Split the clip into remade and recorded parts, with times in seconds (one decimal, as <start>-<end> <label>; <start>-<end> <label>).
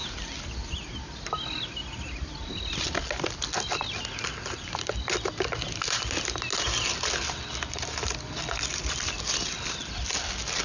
0.0-10.6 recorded